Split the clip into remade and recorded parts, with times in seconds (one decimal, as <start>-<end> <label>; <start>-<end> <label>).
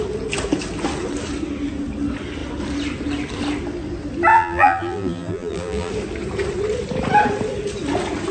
0.0-4.3 recorded; 4.3-5.9 remade; 5.9-8.3 recorded